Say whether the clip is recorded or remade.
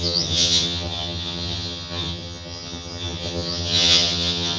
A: remade